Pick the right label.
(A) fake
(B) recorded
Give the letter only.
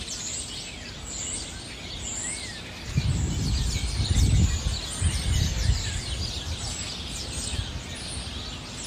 B